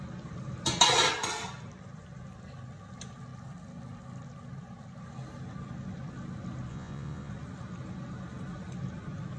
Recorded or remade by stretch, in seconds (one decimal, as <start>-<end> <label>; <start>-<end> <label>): 0.0-6.7 recorded; 6.7-7.3 remade; 7.3-9.4 recorded